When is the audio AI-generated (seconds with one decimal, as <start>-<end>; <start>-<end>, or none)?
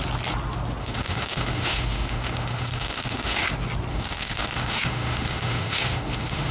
0.8-3.5; 3.9-6.5